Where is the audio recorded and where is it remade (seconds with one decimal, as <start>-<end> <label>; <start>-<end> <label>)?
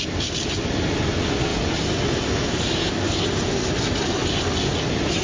0.0-5.2 recorded